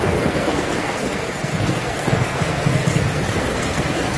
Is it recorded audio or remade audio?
remade